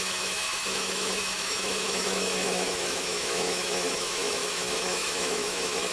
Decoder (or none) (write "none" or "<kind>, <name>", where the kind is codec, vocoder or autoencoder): autoencoder, DAC-VAE